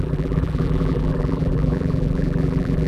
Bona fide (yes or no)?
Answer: no